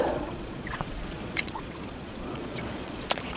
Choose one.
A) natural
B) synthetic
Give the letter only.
B